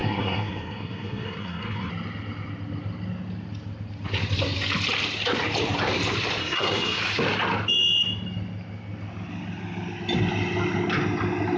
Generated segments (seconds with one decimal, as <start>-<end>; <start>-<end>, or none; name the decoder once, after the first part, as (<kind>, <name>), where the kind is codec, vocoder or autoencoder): 0.0-1.9 (codec, SNAC); 6.4-7.0